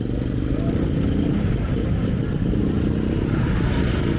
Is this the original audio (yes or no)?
yes